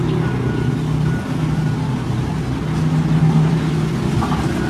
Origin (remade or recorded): recorded